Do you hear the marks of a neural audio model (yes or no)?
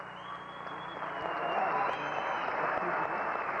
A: no